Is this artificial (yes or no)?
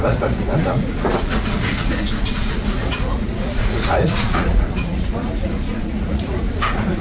yes